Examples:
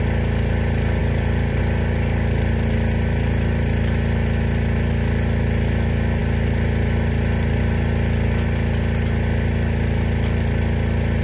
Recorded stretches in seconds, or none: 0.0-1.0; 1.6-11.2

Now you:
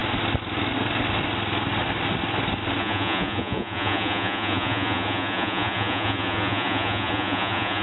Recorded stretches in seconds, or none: 0.0-2.8

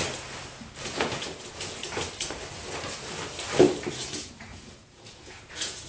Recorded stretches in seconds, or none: 0.0-0.8; 1.8-3.9

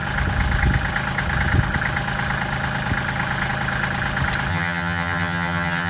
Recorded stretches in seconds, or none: 0.0-4.5

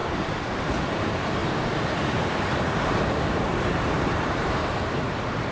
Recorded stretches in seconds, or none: 1.4-2.7

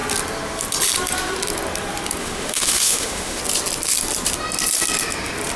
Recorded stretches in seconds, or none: 0.0-2.2; 3.4-5.6

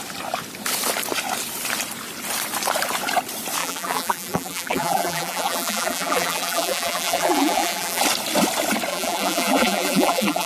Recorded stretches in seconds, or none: 0.0-3.6; 8.0-8.9